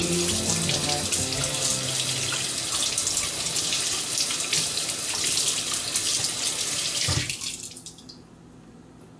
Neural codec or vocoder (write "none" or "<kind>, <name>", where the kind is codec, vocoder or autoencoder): none